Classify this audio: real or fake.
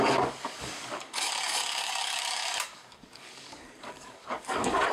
fake